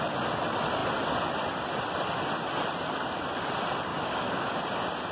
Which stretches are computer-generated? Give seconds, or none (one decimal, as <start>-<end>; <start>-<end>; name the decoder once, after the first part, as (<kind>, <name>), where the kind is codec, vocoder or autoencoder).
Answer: 3.9-4.6 (codec, DAC)